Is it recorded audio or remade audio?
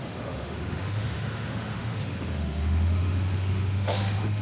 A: remade